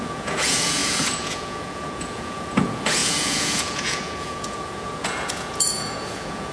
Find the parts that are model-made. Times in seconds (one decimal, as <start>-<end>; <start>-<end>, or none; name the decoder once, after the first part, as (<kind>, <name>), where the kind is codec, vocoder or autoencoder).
0.0-6.5 (vocoder, Vocos)